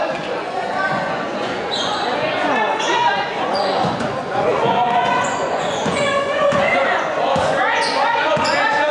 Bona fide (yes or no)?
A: no